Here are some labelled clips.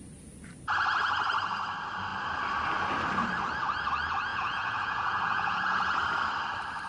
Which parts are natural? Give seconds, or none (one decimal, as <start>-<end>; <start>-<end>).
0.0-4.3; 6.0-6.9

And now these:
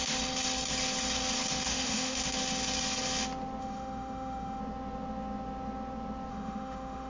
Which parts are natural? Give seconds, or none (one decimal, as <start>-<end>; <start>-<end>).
0.0-1.7; 2.2-3.6; 4.6-6.3

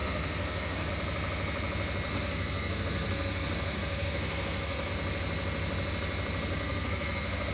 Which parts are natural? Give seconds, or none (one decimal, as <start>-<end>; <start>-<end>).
0.9-2.1; 4.9-6.5

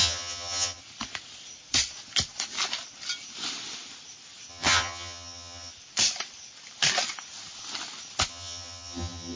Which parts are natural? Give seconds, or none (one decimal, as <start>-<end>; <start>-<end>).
0.8-4.5; 5.7-8.3

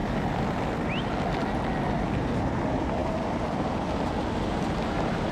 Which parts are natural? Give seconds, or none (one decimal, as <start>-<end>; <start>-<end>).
0.0-5.3